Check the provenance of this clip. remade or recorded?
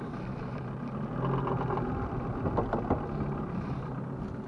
recorded